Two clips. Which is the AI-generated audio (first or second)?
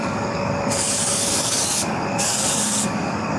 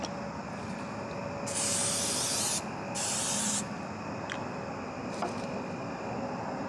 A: first